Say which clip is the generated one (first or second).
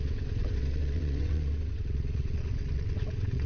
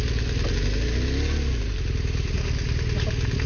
first